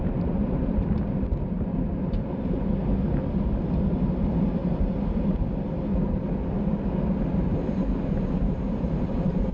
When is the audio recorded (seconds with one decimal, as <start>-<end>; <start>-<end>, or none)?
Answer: 0.0-1.7; 2.6-4.6; 5.2-7.5